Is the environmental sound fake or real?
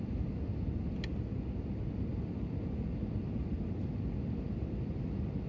real